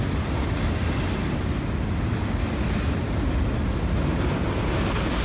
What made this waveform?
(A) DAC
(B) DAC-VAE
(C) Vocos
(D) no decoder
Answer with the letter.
D